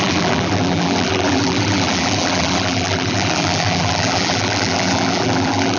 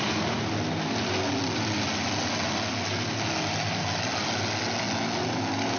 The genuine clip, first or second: second